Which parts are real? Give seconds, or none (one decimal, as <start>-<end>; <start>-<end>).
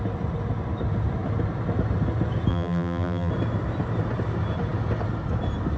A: 0.0-2.5; 3.3-5.8